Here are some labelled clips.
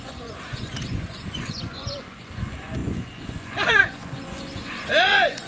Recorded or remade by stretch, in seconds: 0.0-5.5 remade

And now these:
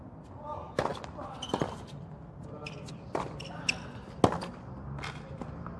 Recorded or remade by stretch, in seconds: 0.0-5.8 recorded

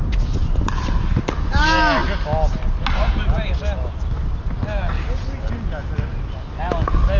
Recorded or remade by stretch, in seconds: 0.0-7.2 recorded

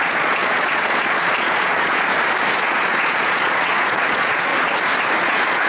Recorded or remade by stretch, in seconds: 0.0-2.1 remade; 2.1-2.6 recorded; 2.6-4.5 remade; 4.5-5.2 recorded; 5.2-5.7 remade